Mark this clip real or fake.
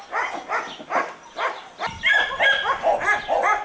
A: real